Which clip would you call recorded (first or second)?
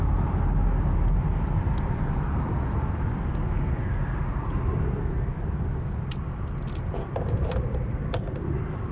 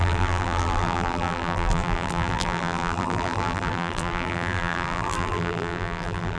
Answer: first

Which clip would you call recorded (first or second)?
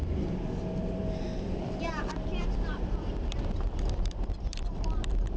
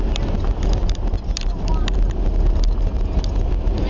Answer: second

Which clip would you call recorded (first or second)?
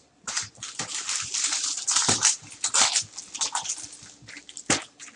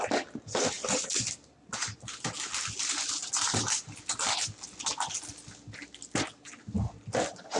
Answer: second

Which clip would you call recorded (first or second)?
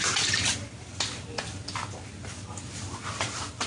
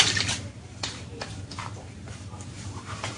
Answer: first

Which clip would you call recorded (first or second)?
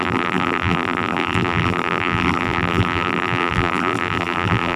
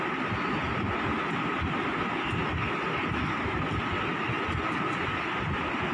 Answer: second